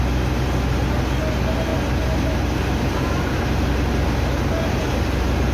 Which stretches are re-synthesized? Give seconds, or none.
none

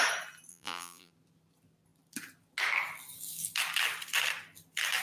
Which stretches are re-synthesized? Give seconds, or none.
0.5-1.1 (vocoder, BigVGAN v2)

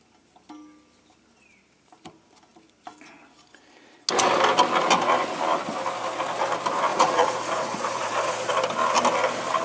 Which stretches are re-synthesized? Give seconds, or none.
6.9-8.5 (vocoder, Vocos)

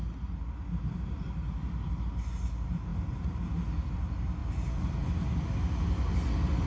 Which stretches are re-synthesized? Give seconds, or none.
none

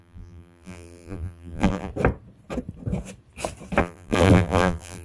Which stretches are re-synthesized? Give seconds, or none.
0.0-1.9 (vocoder, BigVGAN v2); 3.8-5.0

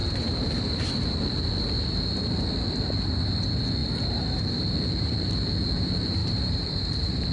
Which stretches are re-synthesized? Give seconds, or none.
0.0-1.6 (vocoder, BigVGAN v2); 3.8-5.8; 6.2-7.3